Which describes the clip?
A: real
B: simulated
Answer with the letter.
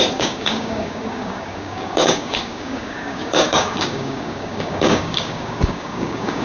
B